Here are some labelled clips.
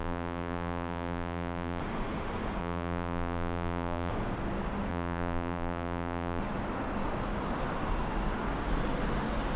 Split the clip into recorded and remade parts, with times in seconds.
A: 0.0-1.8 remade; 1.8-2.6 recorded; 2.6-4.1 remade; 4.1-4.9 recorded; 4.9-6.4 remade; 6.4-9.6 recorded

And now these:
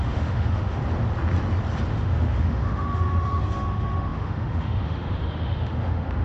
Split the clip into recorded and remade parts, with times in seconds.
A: 0.0-0.8 remade; 0.8-1.9 recorded; 1.9-6.2 remade

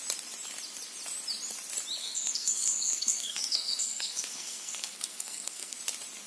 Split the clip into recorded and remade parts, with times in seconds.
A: 0.0-2.0 recorded; 2.0-5.8 remade; 5.8-6.3 recorded

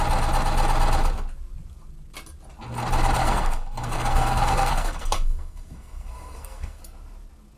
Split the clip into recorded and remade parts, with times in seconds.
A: 0.0-3.2 recorded; 3.2-6.8 remade; 6.8-7.6 recorded

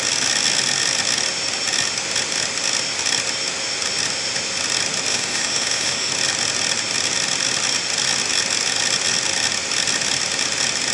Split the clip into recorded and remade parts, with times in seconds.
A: 0.0-5.1 recorded; 5.1-6.1 remade; 6.1-10.9 recorded

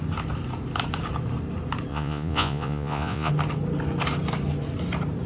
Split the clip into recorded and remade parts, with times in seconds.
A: 0.0-1.9 recorded; 1.9-3.3 remade; 3.3-5.3 recorded

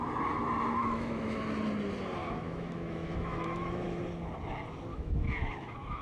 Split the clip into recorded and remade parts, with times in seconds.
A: 0.0-0.8 recorded; 0.8-1.4 remade; 1.4-2.2 recorded; 2.2-4.0 remade; 4.0-4.9 recorded; 4.9-6.0 remade